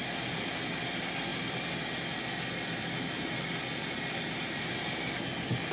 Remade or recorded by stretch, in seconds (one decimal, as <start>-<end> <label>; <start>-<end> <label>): 0.0-5.7 recorded